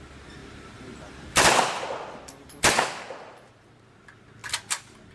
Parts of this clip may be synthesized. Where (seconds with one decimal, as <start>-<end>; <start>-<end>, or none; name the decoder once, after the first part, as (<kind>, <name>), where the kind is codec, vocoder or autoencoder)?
0.4-3.5 (vocoder, BigVGAN v2)